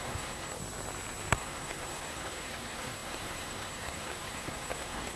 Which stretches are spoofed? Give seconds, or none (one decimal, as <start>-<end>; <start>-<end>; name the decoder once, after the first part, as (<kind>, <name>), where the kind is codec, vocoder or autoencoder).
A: 0.0-0.6 (codec, SNAC); 1.3-5.2